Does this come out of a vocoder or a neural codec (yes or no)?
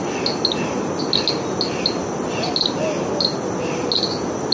no